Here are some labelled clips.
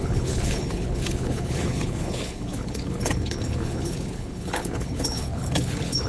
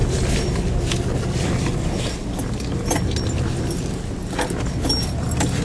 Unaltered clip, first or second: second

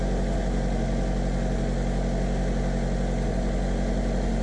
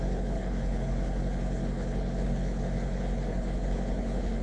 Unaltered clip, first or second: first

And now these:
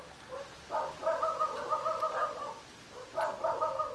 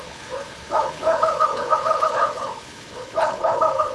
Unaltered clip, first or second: first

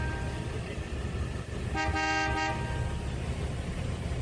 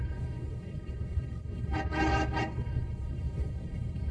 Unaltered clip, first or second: first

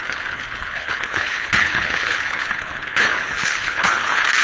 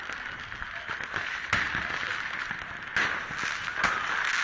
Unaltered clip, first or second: second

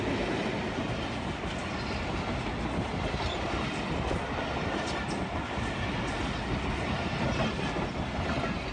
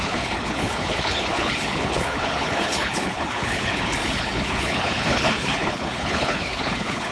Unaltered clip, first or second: first